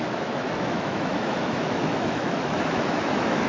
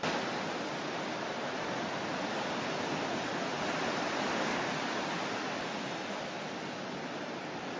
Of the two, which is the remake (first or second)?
first